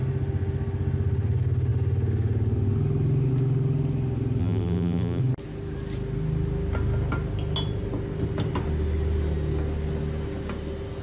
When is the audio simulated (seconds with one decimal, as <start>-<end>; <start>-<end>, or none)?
4.4-5.2